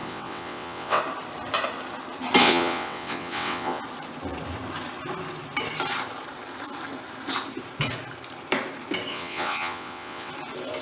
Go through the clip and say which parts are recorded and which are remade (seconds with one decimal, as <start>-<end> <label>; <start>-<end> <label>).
0.0-1.0 remade; 1.0-2.4 recorded; 2.4-3.8 remade; 3.8-9.1 recorded; 9.1-10.3 remade; 10.3-10.8 recorded